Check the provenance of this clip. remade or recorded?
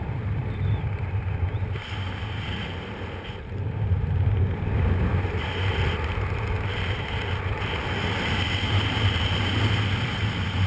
recorded